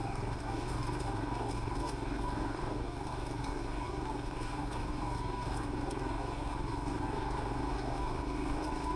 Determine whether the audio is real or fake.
fake